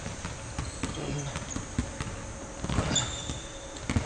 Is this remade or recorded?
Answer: recorded